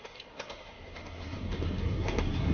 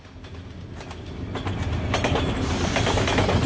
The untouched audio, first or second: second